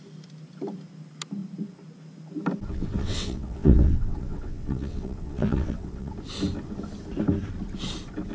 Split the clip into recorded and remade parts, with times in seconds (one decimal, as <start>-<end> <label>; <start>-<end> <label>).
0.0-2.7 recorded; 2.7-6.1 remade; 6.1-8.3 recorded